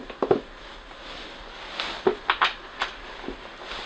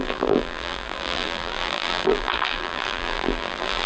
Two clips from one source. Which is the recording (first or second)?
first